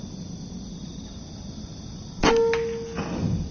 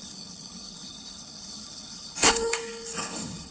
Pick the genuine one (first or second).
first